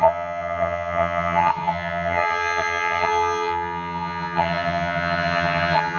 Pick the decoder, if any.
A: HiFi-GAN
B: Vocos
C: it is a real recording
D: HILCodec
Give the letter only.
A